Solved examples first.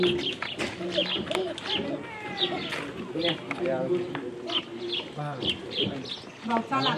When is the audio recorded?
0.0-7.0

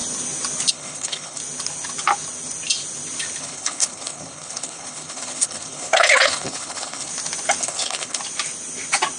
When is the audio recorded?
0.0-0.7; 1.4-3.4; 7.1-7.6; 8.2-9.2

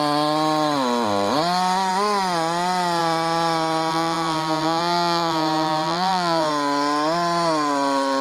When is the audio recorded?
0.0-3.9; 6.5-8.2